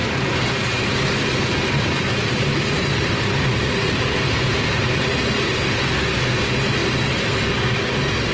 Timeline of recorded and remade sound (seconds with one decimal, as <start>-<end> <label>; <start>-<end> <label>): 0.0-5.0 remade; 5.0-8.3 recorded